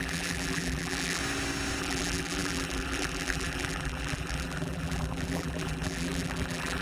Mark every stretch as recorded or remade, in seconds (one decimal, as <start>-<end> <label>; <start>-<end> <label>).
0.0-1.2 remade; 1.2-1.8 recorded; 1.8-6.8 remade